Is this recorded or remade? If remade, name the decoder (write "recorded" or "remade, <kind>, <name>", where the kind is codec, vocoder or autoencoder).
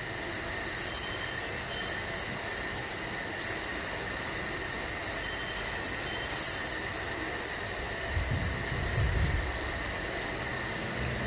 recorded